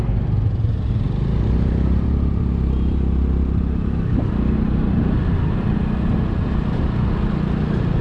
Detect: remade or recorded recorded